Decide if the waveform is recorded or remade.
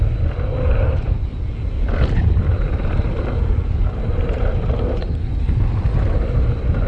recorded